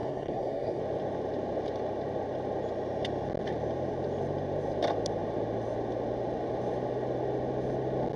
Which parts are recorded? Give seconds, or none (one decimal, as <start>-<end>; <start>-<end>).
0.8-8.2